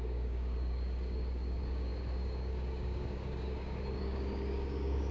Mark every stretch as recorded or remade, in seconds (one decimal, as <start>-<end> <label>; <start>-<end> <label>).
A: 0.0-5.1 remade